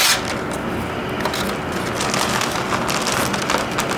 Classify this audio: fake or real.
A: real